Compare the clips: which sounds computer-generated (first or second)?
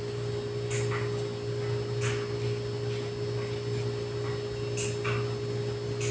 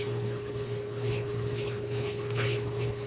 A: second